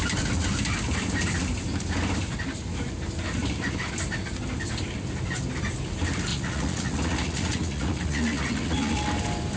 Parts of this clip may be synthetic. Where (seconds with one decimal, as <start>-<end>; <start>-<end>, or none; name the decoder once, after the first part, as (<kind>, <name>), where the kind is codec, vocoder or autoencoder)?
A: 6.3-9.1 (vocoder, Vocos)